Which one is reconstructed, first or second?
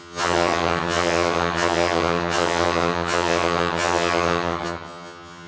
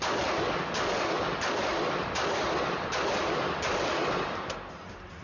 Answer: first